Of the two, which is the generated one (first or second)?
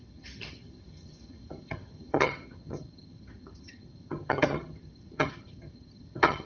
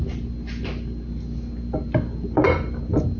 first